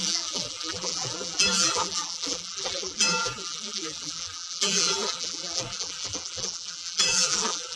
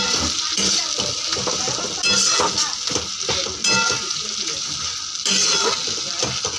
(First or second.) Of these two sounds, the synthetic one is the first